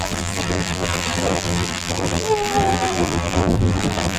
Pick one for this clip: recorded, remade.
remade